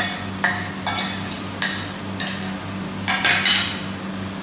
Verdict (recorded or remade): recorded